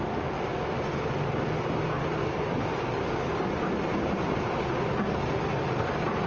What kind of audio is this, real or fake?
fake